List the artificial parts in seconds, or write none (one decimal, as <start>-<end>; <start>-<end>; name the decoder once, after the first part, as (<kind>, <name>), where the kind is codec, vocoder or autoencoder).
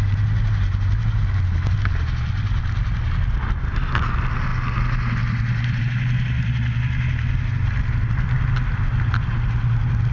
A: none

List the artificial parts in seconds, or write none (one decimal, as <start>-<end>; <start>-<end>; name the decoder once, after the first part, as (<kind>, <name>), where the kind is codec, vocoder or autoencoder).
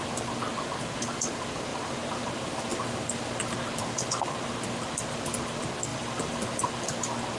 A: 1.7-2.3 (vocoder, BigVGAN v2); 5.9-6.7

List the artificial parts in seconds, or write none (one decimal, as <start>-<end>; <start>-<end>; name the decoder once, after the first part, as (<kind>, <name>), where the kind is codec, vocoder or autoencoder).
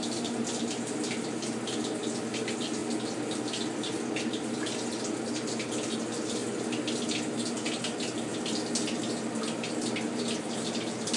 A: none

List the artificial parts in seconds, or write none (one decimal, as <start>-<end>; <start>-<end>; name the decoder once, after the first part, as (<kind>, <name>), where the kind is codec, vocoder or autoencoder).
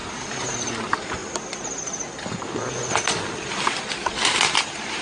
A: none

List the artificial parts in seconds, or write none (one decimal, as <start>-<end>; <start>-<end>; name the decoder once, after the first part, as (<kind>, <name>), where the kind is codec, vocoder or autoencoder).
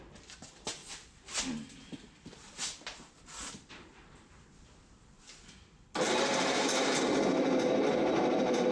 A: none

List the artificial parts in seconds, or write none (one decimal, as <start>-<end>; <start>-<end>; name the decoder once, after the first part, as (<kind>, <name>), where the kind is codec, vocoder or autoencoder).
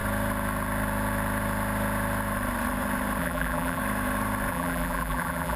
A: 3.2-3.8 (vocoder, BigVGAN v2); 4.5-5.6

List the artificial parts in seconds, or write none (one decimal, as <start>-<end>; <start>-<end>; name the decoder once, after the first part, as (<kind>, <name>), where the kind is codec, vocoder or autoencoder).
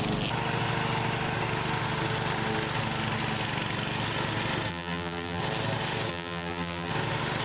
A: 4.7-5.4 (vocoder, BigVGAN v2); 6.1-6.9